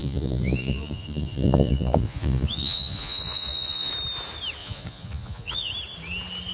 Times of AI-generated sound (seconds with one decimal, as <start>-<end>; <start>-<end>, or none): 0.0-3.9; 4.6-5.7